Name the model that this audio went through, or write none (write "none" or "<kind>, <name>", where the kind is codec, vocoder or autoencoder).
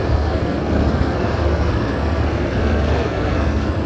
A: codec, SNAC